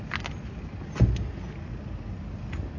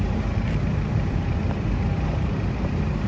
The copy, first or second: second